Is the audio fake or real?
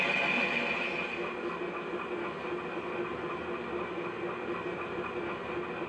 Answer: real